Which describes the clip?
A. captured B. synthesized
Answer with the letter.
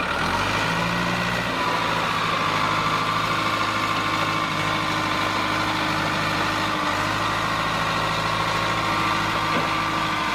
A